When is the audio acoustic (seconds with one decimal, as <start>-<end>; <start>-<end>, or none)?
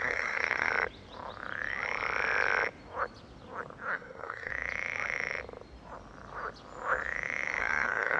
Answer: 0.7-3.9; 4.5-7.6